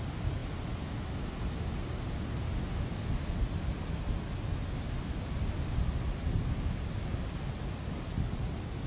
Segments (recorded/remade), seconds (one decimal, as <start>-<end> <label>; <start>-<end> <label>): 0.0-8.9 recorded